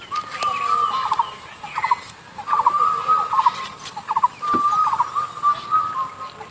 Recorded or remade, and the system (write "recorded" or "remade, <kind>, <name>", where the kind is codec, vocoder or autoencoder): recorded